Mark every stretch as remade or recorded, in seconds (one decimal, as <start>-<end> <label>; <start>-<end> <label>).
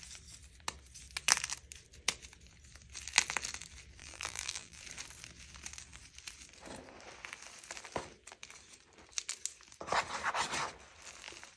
0.0-4.0 recorded; 4.0-4.8 remade; 4.8-11.6 recorded